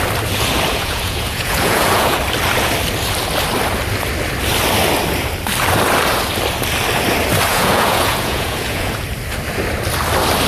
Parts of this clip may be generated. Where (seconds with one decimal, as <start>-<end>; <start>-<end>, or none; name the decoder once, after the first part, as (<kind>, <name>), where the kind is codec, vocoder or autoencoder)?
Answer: 0.7-2.2 (vocoder, Vocos); 7.5-8.9